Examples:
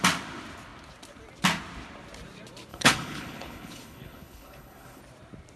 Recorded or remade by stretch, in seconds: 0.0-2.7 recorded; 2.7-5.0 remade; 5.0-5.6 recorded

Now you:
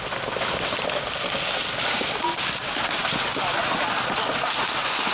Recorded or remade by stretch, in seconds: 0.0-5.1 recorded